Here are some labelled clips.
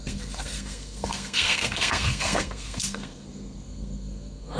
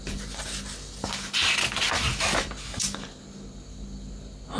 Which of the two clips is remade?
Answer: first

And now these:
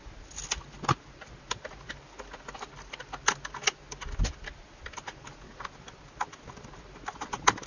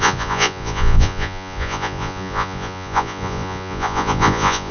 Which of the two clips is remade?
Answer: second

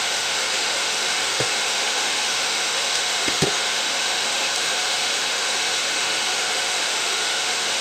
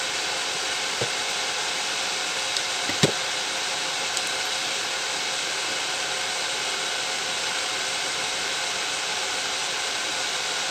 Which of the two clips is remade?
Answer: first